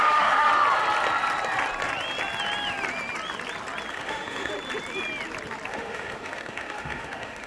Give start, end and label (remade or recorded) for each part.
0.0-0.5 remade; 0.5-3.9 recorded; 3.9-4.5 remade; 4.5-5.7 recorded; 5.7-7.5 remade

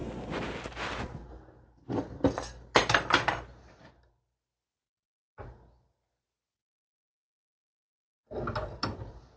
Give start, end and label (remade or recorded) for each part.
0.0-9.4 recorded

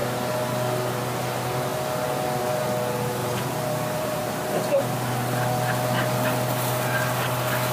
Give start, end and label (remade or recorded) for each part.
0.0-3.2 recorded; 3.2-4.8 remade; 4.8-7.7 recorded